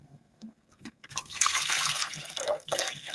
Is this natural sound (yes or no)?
no